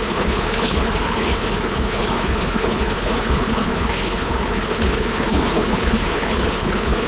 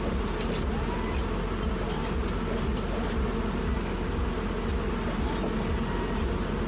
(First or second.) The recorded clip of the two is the second